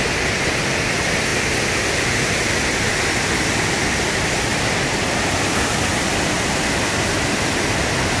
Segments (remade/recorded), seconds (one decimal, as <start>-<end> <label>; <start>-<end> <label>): 0.0-8.2 recorded